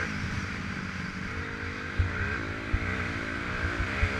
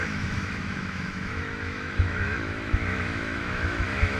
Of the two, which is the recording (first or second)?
first